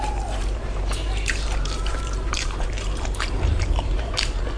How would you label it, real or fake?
fake